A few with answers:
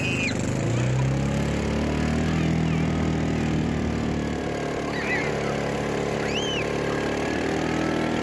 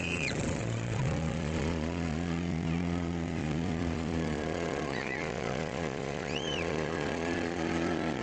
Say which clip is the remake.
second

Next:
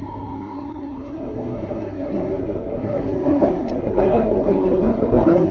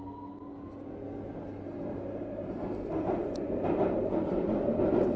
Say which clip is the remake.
first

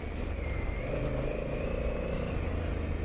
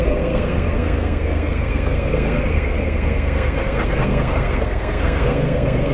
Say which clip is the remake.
second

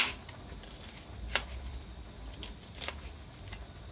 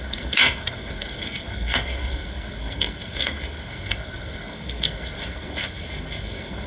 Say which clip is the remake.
second